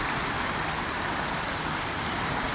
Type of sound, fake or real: real